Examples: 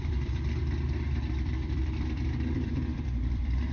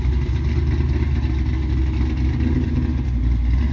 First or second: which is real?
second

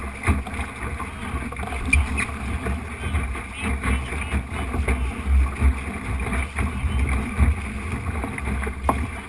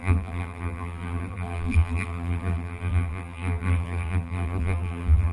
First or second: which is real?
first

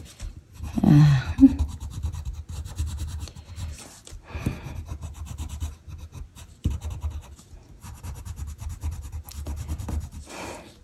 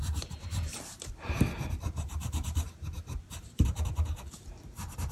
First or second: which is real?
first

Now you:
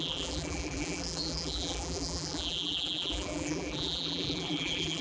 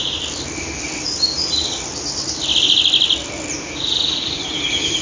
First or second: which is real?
second